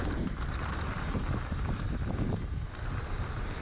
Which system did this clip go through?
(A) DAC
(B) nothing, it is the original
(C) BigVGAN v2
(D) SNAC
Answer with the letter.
B